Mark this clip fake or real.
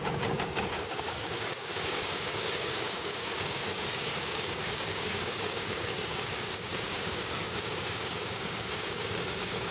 fake